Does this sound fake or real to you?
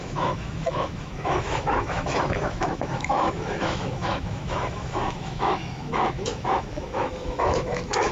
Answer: fake